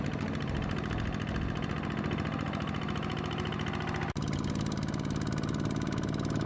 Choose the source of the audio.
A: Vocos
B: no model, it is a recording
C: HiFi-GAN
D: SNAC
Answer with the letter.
B